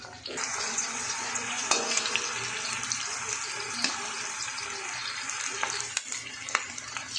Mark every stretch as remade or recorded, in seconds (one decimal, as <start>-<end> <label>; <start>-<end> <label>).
0.0-0.5 recorded; 0.5-2.0 remade; 2.0-7.2 recorded